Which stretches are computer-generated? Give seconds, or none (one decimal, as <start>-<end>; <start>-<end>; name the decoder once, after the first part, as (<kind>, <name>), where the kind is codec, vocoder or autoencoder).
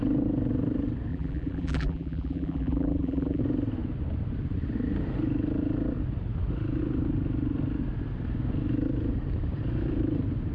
1.1-3.4 (vocoder, BigVGAN v2)